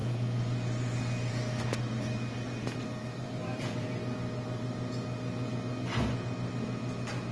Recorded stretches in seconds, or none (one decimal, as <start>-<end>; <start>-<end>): 0.0-3.2; 3.9-7.3